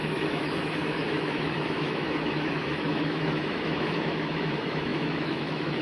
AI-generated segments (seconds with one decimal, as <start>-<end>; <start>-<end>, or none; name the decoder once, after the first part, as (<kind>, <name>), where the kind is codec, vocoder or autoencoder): 0.0-5.8 (autoencoder, DAC-VAE)